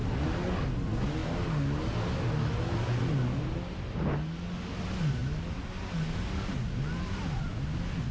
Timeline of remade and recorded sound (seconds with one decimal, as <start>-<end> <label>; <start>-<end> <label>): 0.0-8.1 recorded